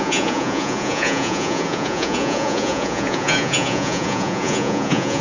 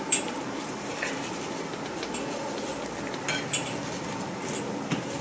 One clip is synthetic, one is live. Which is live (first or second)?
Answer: second